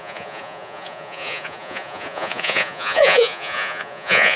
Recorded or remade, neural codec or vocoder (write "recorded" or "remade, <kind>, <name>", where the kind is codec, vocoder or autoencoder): remade, vocoder, Vocos